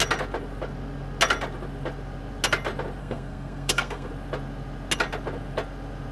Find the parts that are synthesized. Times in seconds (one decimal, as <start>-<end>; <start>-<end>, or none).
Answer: 3.0-4.1